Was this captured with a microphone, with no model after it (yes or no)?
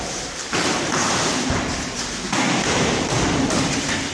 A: no